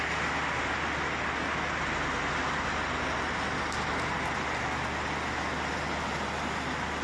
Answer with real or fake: real